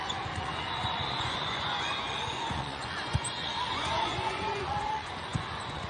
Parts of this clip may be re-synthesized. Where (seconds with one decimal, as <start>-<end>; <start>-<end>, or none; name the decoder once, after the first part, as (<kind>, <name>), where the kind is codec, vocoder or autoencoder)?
0.0-5.9 (vocoder, Vocos)

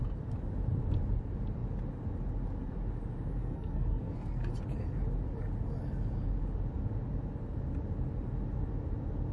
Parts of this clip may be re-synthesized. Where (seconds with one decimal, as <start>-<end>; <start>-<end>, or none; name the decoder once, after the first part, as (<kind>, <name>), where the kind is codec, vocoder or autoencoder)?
3.4-4.5 (codec, SNAC)